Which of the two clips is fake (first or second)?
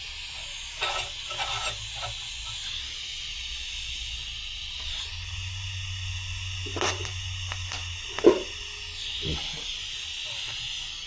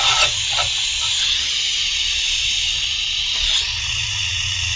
second